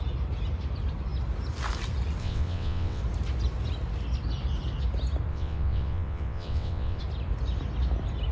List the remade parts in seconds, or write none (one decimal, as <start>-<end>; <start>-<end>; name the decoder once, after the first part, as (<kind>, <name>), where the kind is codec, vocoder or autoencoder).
2.2-3.0 (vocoder, WaveNeXt); 5.3-7.0